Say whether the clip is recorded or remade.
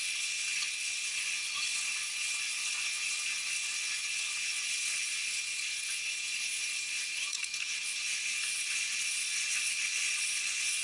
remade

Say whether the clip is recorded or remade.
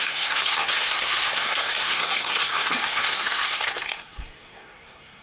remade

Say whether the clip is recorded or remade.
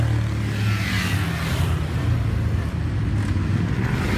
recorded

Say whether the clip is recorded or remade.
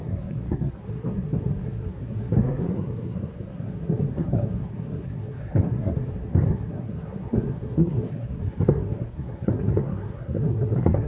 remade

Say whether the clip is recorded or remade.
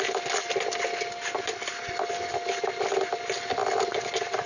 recorded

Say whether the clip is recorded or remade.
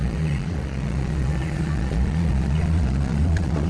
remade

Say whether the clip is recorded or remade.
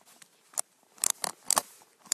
remade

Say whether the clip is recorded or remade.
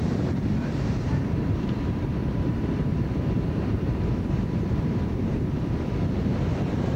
remade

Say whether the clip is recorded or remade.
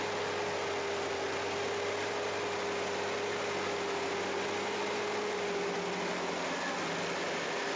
recorded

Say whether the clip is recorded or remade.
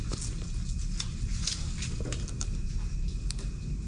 recorded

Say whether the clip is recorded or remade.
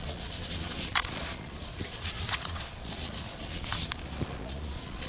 remade